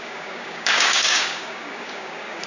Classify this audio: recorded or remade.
remade